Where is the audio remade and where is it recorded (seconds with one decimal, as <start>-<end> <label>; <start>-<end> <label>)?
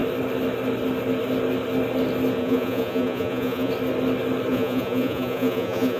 0.0-2.4 recorded; 2.4-3.7 remade; 3.7-4.5 recorded; 4.5-6.0 remade